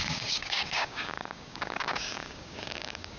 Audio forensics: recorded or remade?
remade